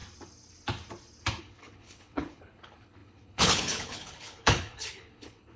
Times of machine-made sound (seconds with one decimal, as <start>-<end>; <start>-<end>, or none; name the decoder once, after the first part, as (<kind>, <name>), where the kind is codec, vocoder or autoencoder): 1.4-5.6 (codec, HILCodec)